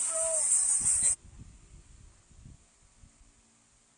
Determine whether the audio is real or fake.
real